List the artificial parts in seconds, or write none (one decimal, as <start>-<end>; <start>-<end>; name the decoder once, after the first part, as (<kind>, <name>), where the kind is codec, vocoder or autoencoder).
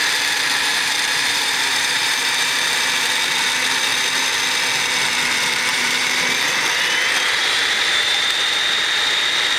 0.7-2.8 (vocoder, BigVGAN v2); 5.7-6.5; 7.4-8.6